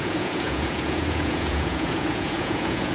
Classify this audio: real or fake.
fake